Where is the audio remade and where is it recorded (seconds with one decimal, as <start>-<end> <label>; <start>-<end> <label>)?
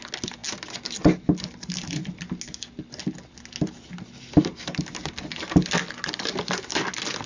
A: 0.0-7.3 recorded